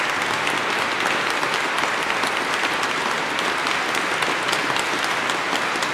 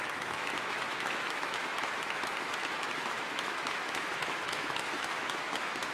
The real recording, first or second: first